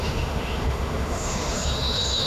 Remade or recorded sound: remade